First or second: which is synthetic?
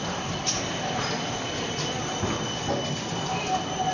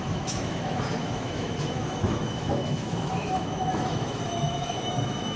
second